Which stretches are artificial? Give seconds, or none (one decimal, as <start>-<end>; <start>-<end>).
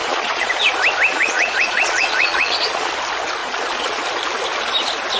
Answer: 0.0-0.5; 1.1-2.9; 3.4-4.1